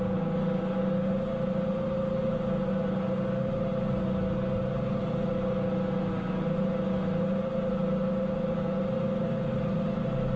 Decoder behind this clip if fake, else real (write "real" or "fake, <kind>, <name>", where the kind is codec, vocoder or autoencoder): real